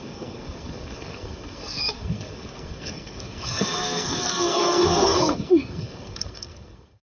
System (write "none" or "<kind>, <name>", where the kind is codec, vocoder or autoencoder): codec, SNAC